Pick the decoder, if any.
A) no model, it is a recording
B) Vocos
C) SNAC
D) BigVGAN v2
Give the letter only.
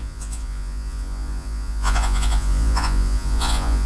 B